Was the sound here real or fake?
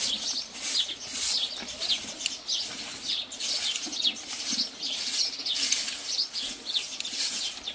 real